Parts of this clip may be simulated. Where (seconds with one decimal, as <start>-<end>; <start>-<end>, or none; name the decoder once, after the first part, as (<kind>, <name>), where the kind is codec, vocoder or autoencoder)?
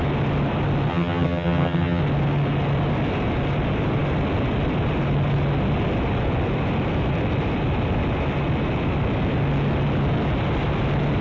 0.9-2.0 (vocoder, HiFi-GAN)